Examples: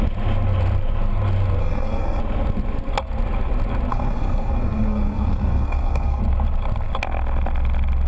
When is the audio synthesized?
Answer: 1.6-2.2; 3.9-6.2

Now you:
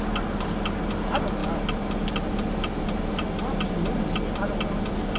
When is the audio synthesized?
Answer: none

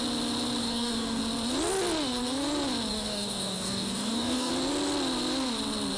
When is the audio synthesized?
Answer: 0.6-1.2; 2.9-4.5